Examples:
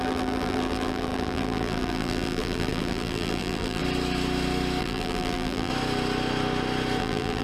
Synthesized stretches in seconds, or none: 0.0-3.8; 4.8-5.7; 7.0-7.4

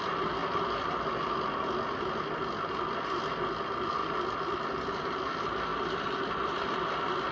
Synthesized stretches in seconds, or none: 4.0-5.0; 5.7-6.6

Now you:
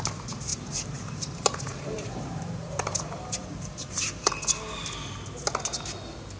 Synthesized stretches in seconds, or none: 0.5-4.3